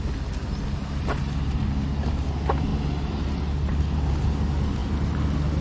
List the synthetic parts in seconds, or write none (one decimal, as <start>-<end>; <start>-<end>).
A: none

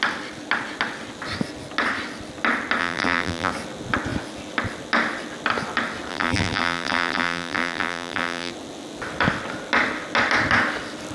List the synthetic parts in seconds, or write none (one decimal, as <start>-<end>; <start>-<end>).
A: 2.8-3.5; 6.1-8.5

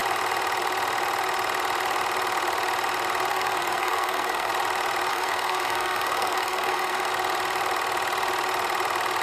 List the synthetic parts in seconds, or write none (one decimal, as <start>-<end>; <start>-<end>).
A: 3.3-4.5; 5.1-7.1

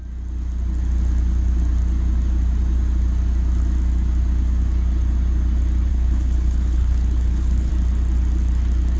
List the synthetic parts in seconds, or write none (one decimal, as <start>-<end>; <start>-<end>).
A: 5.9-7.7

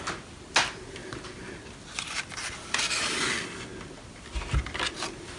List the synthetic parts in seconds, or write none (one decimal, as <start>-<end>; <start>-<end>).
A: 1.0-1.6

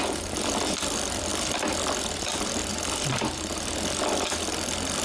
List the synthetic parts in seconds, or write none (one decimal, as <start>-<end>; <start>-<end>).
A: none